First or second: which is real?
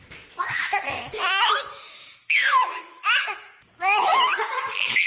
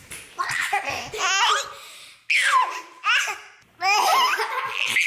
second